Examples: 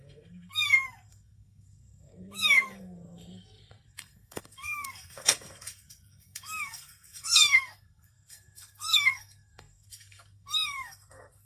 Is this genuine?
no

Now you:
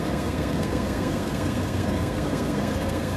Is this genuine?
no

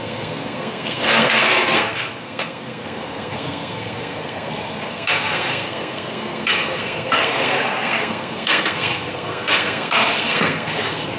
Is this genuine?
no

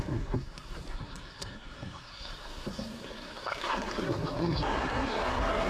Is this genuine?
no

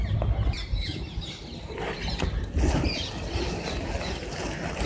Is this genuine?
yes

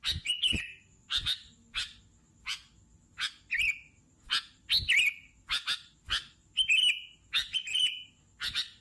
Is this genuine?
yes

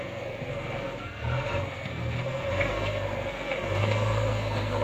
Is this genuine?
no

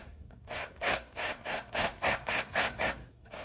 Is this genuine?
no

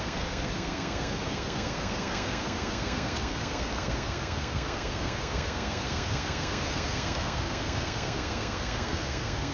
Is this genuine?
no